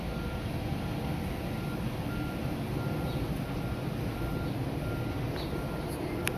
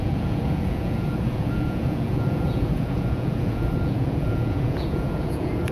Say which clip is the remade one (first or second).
second